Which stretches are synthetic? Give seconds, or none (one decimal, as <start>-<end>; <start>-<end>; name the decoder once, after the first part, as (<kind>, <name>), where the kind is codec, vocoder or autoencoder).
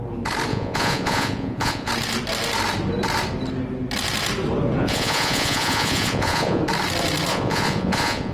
0.5-1.9 (vocoder, Vocos); 4.8-6.6; 7.3-8.3